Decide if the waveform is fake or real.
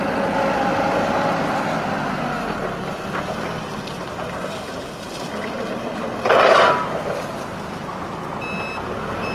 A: real